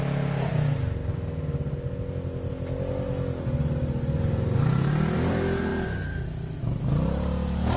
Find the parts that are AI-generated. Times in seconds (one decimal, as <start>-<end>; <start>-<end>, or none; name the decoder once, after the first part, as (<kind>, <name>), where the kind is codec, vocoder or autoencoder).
none